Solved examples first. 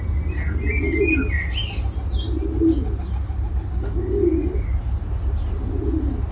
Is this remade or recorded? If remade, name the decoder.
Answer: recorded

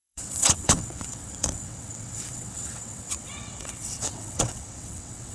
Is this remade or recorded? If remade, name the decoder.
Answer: remade, vocoder, WaveNeXt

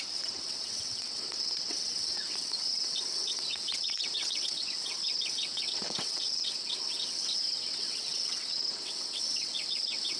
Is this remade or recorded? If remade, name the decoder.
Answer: remade, vocoder, WaveNeXt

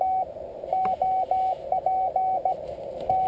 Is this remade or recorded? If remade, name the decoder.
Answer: recorded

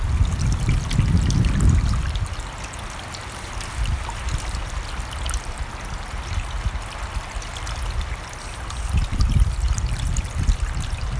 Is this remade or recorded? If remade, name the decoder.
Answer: recorded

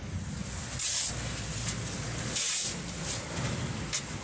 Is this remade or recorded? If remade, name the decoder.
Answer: recorded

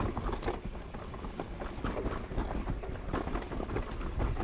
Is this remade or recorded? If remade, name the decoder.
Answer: recorded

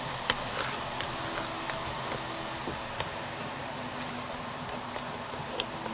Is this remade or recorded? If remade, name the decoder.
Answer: recorded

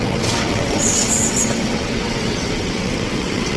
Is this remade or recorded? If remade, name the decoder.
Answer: remade, vocoder, WaveNeXt